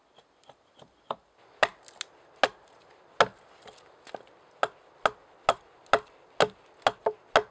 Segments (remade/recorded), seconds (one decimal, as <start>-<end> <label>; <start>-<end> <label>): 0.0-7.5 recorded